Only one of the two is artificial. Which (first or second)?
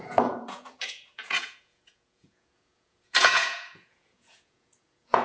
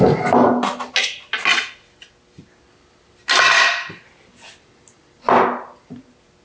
first